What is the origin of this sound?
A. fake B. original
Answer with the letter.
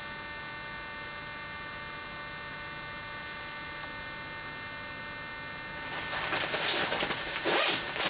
B